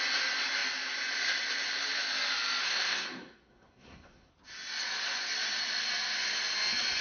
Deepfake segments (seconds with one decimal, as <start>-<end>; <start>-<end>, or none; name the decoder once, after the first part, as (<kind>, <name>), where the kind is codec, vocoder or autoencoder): 2.6-4.3 (codec, SNAC)